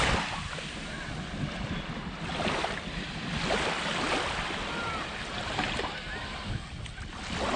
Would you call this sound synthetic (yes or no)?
no